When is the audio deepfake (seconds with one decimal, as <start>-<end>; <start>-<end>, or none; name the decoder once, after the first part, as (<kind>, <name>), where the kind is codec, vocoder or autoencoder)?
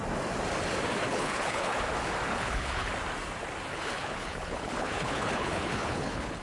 1.0-1.8 (codec, HILCodec); 2.3-2.9; 3.7-6.4